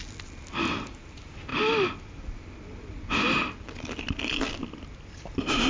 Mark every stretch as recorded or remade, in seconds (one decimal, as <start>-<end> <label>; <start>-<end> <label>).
0.0-5.7 recorded